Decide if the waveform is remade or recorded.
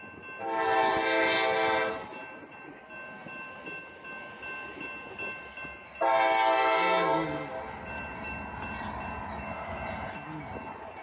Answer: recorded